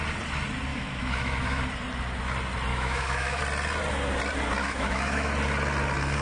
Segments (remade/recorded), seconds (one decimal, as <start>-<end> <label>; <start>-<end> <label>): 0.0-0.7 recorded; 0.7-1.6 remade; 1.6-2.7 recorded; 2.7-3.4 remade; 3.4-4.6 recorded; 4.6-5.3 remade; 5.3-6.2 recorded